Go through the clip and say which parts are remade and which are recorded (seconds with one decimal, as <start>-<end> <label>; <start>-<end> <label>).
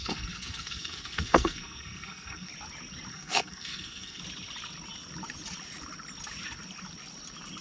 0.0-2.5 remade; 2.5-3.1 recorded; 3.1-4.2 remade; 4.2-7.6 recorded